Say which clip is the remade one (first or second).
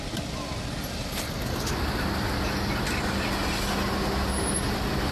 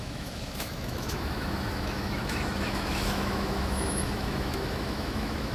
second